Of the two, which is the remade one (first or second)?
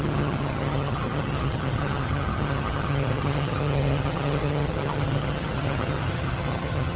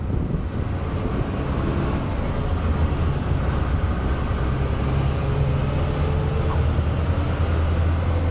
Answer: first